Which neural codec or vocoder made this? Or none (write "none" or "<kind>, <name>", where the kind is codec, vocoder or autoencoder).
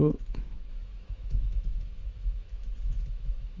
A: autoencoder, DAC-VAE